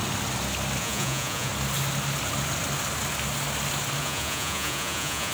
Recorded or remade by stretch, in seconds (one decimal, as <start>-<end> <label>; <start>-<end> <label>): 0.0-0.8 recorded; 0.8-1.5 remade; 1.5-4.0 recorded; 4.0-5.3 remade